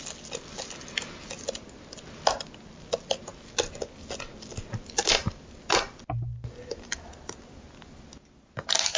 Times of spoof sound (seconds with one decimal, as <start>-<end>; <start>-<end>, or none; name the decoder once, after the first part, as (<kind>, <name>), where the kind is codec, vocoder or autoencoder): none